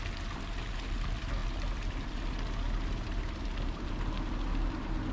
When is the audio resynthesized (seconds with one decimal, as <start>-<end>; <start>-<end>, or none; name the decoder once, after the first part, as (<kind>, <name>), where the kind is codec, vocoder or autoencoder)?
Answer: none